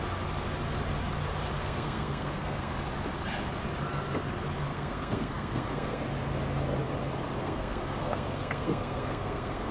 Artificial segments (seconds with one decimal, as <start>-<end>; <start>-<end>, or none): 1.6-2.7; 4.7-6.0; 7.4-9.7